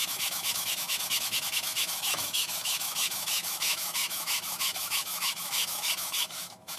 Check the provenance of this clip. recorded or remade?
remade